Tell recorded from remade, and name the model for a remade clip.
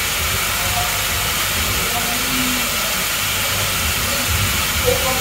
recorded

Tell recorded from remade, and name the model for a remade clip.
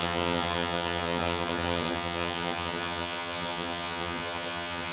remade, vocoder, HiFi-GAN